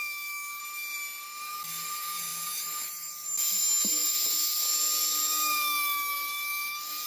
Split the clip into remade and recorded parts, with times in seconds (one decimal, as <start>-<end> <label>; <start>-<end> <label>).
0.0-0.6 remade; 0.6-1.4 recorded; 1.4-7.1 remade